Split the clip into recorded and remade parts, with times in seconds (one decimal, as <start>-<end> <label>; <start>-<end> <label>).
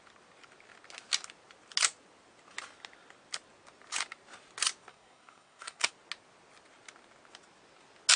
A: 0.0-4.9 recorded; 4.9-5.9 remade; 5.9-8.2 recorded